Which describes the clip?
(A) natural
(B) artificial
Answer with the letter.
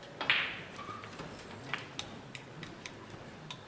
A